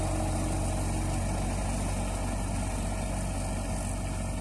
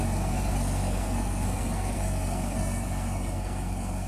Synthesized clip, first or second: second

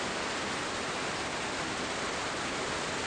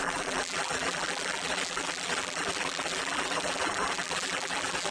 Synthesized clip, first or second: second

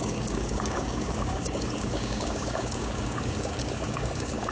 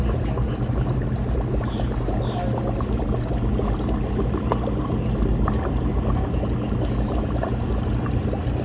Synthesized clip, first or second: first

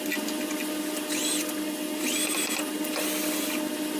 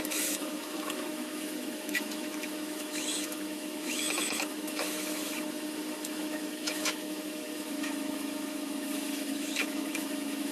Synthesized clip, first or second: second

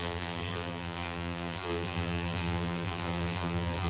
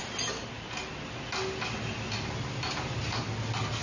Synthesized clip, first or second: first